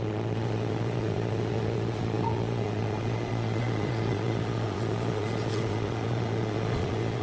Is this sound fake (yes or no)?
yes